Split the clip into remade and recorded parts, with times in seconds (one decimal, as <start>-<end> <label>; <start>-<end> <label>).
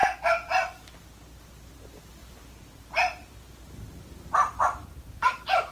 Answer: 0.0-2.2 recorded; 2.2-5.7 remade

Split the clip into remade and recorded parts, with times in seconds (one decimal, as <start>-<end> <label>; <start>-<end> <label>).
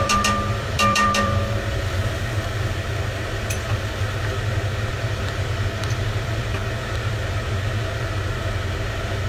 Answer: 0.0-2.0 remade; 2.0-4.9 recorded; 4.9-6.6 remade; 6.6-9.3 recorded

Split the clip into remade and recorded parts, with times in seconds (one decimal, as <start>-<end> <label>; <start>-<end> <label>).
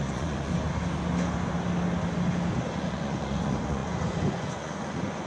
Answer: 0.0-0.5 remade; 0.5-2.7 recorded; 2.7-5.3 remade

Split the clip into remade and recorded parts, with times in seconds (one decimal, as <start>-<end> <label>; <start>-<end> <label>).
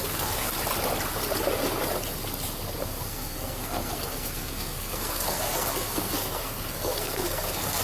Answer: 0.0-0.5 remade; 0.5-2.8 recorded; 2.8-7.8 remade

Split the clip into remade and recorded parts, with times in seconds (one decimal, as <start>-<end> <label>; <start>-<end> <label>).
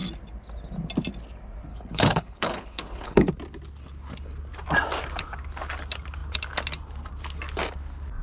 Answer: 0.0-1.7 recorded; 1.7-3.3 remade; 3.3-8.2 recorded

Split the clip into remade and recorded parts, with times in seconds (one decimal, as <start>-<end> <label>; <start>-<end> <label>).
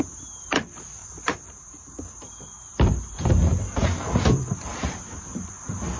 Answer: 0.0-1.0 recorded; 1.0-4.2 remade; 4.2-4.7 recorded; 4.7-5.5 remade; 5.5-6.0 recorded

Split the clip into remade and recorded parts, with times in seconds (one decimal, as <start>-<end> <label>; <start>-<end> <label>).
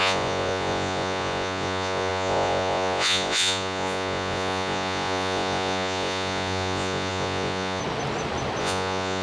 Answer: 0.0-7.8 remade; 7.8-8.6 recorded; 8.6-9.2 remade